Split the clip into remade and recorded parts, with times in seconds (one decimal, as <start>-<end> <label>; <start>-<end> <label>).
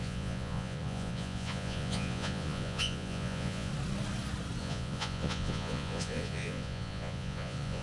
0.0-3.7 remade; 3.7-4.6 recorded; 4.6-7.8 remade